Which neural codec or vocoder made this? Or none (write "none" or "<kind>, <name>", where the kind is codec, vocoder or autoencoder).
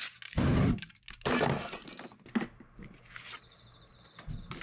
none